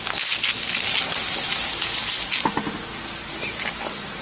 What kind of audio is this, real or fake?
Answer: real